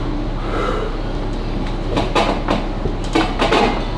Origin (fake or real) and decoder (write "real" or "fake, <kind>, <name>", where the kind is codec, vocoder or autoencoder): real